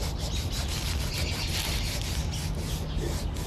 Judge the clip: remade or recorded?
recorded